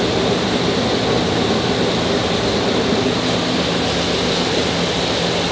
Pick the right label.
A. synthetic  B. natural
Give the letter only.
B